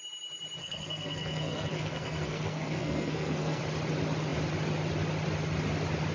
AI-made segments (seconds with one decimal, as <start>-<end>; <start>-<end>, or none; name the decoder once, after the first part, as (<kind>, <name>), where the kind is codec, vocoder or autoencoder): 0.6-3.6 (codec, SNAC)